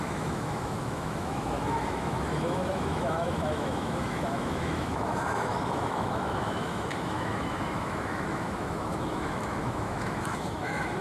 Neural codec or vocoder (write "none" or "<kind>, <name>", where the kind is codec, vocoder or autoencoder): autoencoder, DAC-VAE